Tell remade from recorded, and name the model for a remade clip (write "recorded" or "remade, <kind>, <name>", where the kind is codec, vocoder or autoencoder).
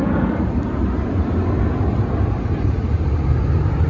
recorded